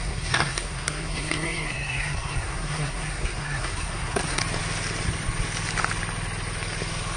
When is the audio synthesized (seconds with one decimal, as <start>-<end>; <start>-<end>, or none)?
0.0-4.4